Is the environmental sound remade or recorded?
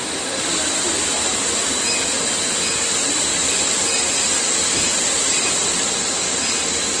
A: recorded